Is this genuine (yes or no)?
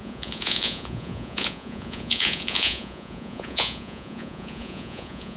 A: no